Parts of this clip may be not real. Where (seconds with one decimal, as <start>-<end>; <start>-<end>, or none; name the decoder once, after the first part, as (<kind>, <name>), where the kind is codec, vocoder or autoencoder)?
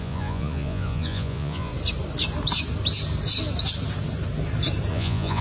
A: 0.0-1.7 (vocoder, Vocos); 4.9-5.4